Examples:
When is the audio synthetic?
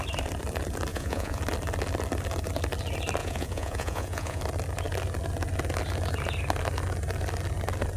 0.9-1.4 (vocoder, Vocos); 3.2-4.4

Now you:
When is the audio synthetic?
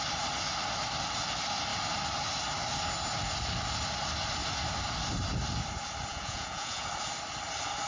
6.1-6.9 (vocoder, Vocos)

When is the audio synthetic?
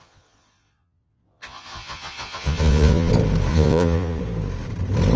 0.0-3.1 (vocoder, Vocos); 3.5-4.2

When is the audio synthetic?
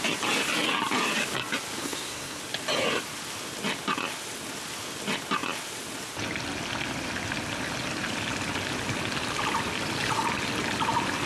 1.8-2.4 (codec, SNAC)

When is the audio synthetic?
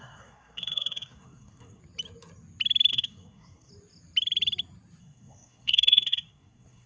0.0-1.8 (codec, SNAC); 2.9-3.7; 5.0-6.9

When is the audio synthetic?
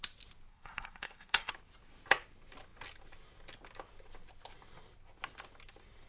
0.5-1.5 (codec, SNAC)